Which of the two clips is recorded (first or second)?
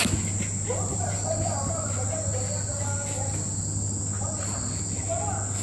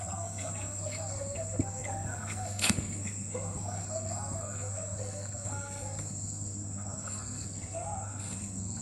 first